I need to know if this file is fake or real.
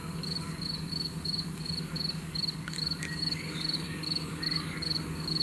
fake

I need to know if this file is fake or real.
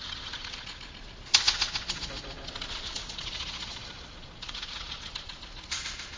fake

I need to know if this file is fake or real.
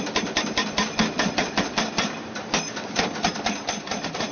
real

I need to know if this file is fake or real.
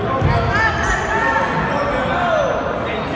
real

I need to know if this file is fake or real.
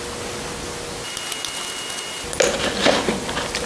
real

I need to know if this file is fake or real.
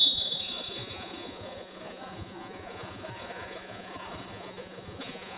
fake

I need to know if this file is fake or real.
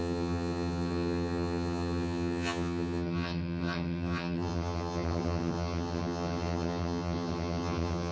fake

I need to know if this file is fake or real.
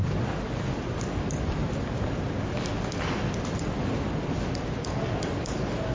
real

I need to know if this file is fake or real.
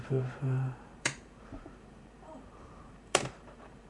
fake